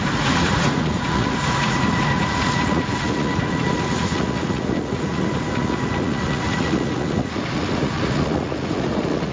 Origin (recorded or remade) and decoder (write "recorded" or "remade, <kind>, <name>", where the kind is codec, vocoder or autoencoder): remade, vocoder, Vocos